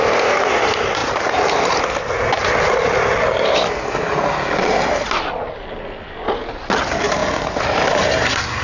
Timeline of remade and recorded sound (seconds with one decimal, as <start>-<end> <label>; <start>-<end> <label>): 0.0-8.6 recorded